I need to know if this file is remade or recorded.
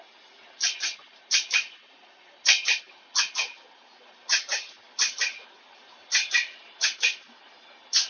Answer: recorded